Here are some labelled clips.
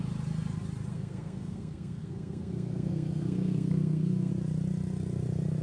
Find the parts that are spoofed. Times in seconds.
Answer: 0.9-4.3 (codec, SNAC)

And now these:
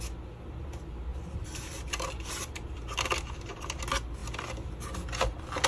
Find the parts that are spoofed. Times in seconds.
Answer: none

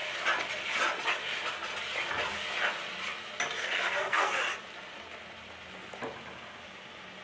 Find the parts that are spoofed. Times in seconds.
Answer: 3.6-4.4 (codec, SNAC)